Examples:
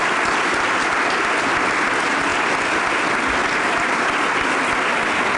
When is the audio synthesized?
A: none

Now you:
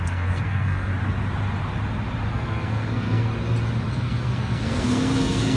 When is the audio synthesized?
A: 0.0-0.9; 2.3-3.3; 3.9-5.6

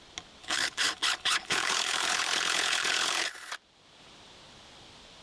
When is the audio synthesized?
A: 0.4-3.5

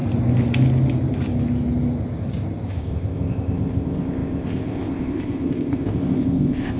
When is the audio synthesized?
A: 2.7-6.8

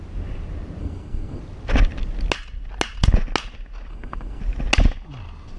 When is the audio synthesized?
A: 0.8-1.4; 3.9-4.4